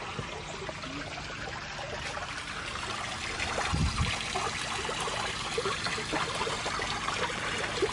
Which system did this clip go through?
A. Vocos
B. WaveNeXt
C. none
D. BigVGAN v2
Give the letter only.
C